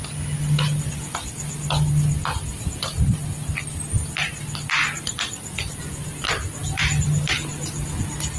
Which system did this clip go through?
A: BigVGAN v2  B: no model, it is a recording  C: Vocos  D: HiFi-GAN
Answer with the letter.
B